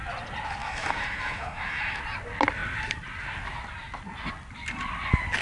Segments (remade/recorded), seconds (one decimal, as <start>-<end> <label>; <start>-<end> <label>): 0.0-0.6 recorded; 0.6-2.0 remade; 2.0-5.4 recorded